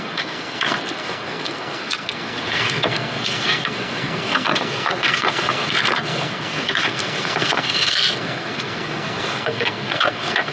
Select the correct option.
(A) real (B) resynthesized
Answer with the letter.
B